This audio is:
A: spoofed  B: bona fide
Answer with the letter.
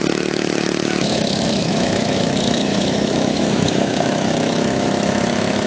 A